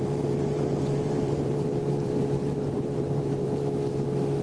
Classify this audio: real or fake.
fake